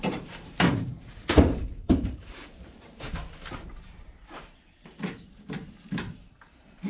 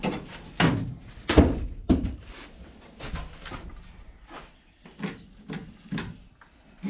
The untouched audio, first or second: second